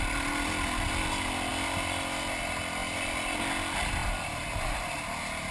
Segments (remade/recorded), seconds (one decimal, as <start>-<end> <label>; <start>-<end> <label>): 0.0-5.5 recorded